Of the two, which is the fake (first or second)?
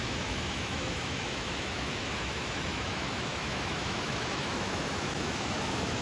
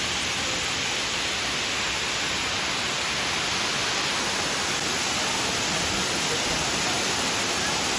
first